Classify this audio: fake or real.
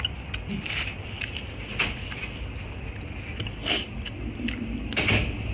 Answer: real